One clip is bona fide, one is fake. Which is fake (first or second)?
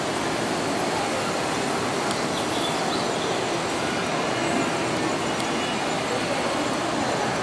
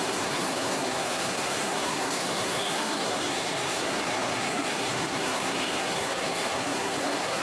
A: second